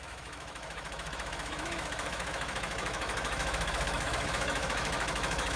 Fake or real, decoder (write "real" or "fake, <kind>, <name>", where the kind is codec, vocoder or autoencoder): fake, autoencoder, DAC-VAE